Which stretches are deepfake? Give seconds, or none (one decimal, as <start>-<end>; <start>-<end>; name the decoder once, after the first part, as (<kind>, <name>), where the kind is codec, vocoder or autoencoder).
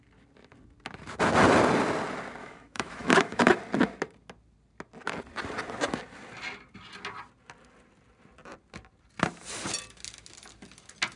2.4-3.5 (autoencoder, DAC-VAE)